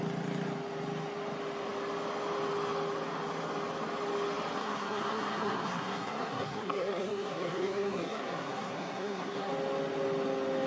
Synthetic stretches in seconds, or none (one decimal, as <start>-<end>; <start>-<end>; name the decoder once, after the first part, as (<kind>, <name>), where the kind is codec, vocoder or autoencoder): 4.6-9.5 (codec, SNAC)